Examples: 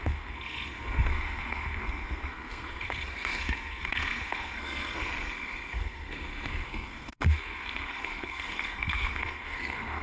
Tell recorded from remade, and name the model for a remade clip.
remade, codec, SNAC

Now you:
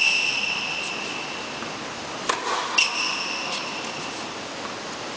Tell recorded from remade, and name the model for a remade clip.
recorded